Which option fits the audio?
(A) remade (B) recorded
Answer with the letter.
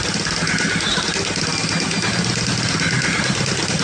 B